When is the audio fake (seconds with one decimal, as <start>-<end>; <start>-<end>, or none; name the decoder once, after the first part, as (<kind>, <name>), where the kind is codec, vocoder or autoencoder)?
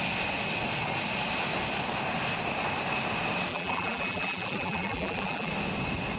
3.5-5.5 (vocoder, BigVGAN v2)